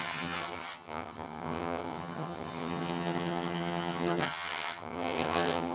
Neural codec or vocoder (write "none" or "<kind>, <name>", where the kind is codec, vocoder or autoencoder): vocoder, HiFi-GAN